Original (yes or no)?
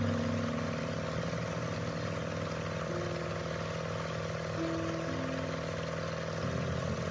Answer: yes